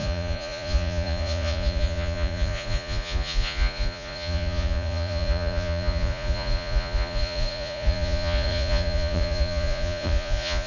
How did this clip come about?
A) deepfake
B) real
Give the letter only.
A